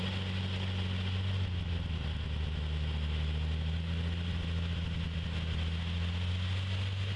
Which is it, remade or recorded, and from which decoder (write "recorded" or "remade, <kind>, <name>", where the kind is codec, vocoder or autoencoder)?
recorded